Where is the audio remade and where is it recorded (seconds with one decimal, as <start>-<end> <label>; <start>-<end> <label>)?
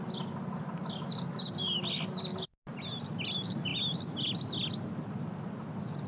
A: 0.0-6.1 recorded